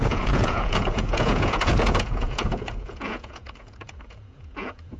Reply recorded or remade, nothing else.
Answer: remade